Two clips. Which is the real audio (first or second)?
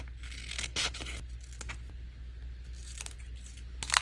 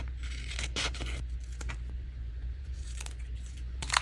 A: first